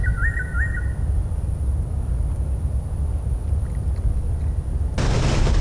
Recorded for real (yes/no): yes